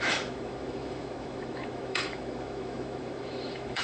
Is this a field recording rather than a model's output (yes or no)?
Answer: no